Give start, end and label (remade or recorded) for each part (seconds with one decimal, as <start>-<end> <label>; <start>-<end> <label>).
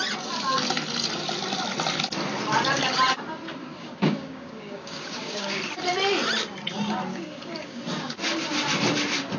0.0-3.6 recorded; 3.6-5.6 remade; 5.6-7.1 recorded; 7.1-7.8 remade; 7.8-9.4 recorded